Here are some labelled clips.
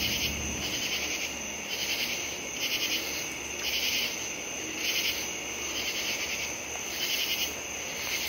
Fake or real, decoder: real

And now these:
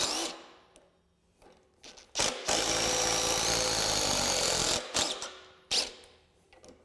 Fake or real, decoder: real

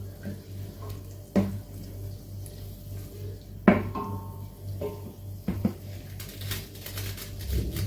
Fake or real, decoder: real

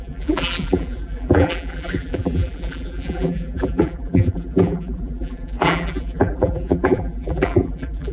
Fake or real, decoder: fake, vocoder, BigVGAN v2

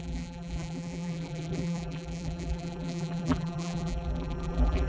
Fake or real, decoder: fake, vocoder, BigVGAN v2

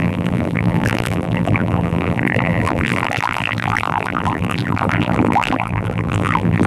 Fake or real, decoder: fake, vocoder, BigVGAN v2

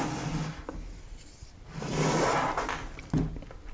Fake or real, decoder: real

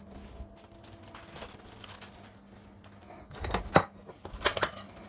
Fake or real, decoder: real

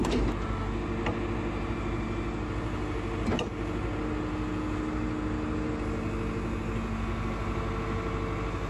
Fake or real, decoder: real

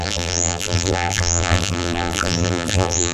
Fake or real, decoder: fake, vocoder, BigVGAN v2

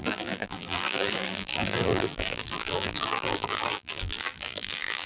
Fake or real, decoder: fake, vocoder, BigVGAN v2